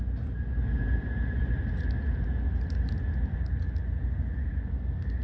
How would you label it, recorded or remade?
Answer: recorded